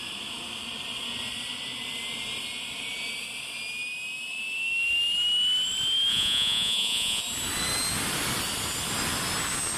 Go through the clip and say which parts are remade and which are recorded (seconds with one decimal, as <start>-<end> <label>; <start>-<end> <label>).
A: 0.0-6.1 recorded; 6.1-7.2 remade; 7.2-9.8 recorded